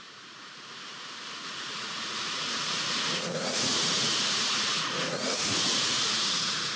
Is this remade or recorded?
remade